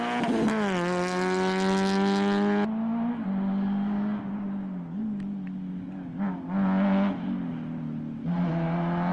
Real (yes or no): yes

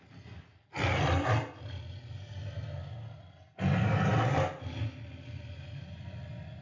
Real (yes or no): yes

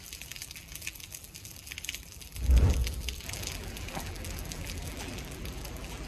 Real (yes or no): no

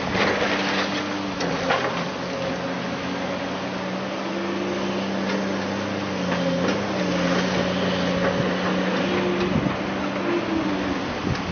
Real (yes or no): yes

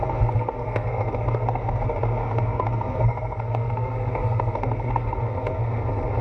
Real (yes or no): no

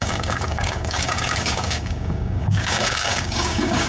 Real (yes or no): no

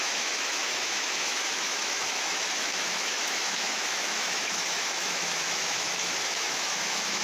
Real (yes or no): no